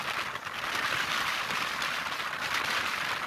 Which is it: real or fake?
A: real